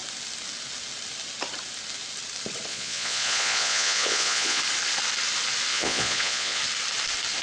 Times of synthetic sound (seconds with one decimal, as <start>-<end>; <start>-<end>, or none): 2.7-4.6; 5.7-6.6